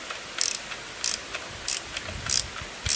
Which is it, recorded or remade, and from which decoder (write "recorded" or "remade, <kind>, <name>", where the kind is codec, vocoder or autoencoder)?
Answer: recorded